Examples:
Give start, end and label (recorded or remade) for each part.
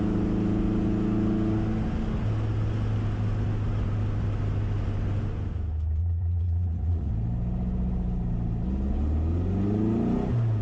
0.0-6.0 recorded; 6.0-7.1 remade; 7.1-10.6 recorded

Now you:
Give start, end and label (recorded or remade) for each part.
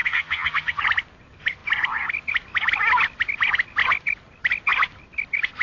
0.0-0.8 remade; 0.8-5.6 recorded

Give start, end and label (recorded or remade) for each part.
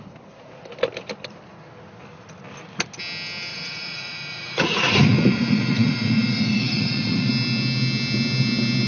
0.0-3.5 recorded; 3.5-7.3 remade; 7.3-8.9 recorded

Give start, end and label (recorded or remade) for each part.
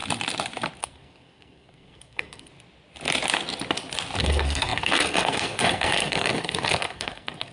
0.0-0.8 recorded; 0.8-2.5 remade; 2.5-4.2 recorded; 4.2-7.5 remade